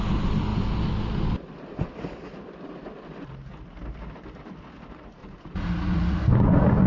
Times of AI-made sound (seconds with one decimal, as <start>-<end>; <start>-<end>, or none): 5.2-6.2